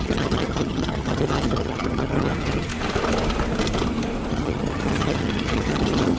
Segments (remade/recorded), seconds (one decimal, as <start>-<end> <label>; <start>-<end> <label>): 0.0-2.7 remade; 2.7-4.3 recorded; 4.3-6.2 remade